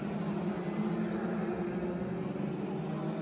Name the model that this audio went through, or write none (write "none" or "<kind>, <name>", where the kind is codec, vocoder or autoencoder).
none